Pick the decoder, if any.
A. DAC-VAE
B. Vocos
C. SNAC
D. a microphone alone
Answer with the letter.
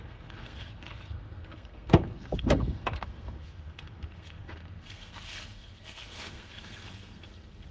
C